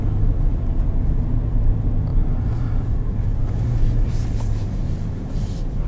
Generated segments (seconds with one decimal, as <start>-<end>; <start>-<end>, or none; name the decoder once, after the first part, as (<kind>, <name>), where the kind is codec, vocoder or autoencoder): 2.1-5.9 (vocoder, BigVGAN v2)